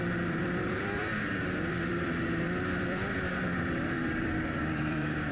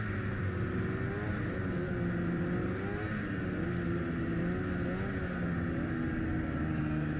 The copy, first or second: first